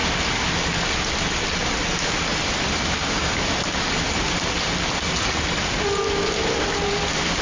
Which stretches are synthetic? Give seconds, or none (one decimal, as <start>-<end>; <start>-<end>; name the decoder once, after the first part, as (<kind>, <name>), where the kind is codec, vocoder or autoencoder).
0.0-0.9 (vocoder, BigVGAN v2); 2.3-6.7